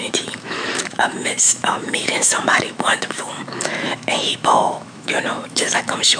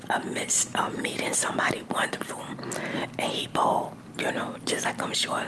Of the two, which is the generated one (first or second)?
first